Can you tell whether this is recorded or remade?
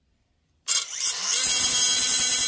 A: remade